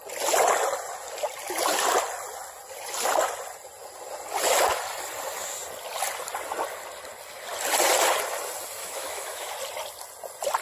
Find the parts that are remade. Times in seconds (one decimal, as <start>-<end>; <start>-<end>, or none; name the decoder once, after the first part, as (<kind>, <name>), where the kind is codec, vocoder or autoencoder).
8.8-9.5 (autoencoder, DAC-VAE)